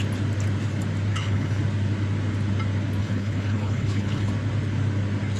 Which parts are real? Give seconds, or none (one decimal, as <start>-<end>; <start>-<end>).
0.0-1.1; 1.6-3.0; 4.3-5.4